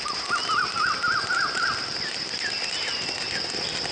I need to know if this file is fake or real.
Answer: real